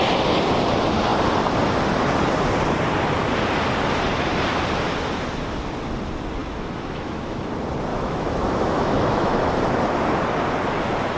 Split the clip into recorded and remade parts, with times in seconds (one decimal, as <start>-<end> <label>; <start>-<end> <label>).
0.0-6.4 recorded; 6.4-7.5 remade; 7.5-7.9 recorded; 7.9-9.5 remade; 9.5-11.2 recorded